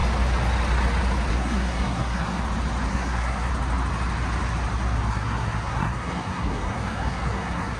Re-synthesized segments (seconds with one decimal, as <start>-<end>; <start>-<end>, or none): 1.3-2.4; 2.9-3.5; 5.1-7.8